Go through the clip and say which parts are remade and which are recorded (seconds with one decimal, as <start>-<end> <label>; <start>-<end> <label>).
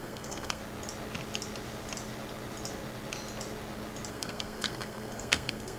0.0-0.6 remade; 0.6-4.1 recorded; 4.1-5.8 remade